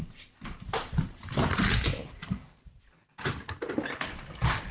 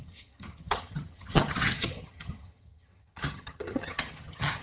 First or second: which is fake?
second